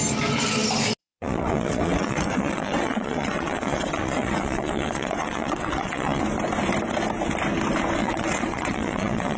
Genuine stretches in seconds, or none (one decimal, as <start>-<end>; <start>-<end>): 0.0-1.0; 6.2-8.0